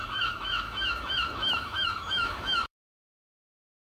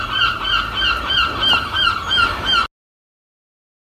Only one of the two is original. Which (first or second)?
second